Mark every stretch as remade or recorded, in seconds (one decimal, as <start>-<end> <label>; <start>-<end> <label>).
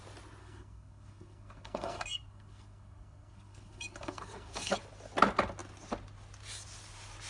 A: 0.0-0.4 recorded; 0.4-4.8 remade; 4.8-7.3 recorded